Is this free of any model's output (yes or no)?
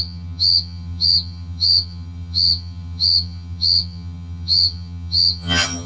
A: no